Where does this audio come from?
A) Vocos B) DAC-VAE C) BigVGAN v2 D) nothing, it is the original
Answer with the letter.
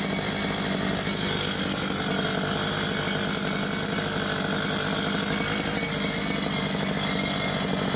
D